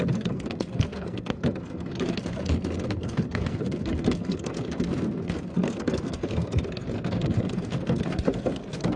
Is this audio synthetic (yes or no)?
yes